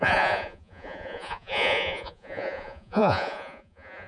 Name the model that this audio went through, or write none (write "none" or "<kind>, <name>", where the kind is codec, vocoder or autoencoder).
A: vocoder, Vocos